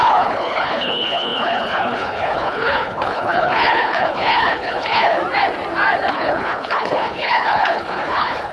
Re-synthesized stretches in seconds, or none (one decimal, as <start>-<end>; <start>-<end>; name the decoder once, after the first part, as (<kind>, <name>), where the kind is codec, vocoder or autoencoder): 0.0-5.2 (codec, HILCodec); 6.1-8.5